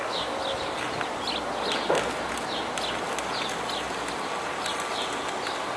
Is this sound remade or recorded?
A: recorded